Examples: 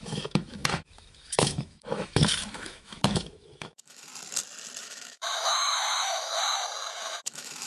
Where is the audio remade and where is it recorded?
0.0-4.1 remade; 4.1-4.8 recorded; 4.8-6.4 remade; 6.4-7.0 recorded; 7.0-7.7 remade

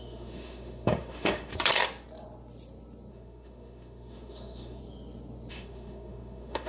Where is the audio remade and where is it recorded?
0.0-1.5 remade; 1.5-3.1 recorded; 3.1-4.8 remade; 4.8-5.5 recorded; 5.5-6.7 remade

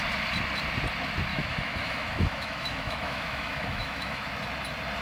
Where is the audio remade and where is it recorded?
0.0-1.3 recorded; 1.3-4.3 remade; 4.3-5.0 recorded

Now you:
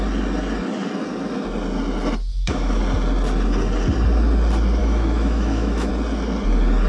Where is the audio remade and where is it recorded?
0.0-2.3 recorded; 2.3-2.8 remade; 2.8-4.8 recorded; 4.8-5.9 remade; 5.9-6.9 recorded

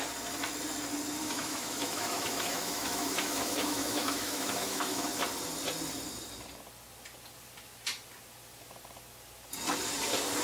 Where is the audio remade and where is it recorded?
0.0-1.2 recorded; 1.2-5.1 remade; 5.1-10.4 recorded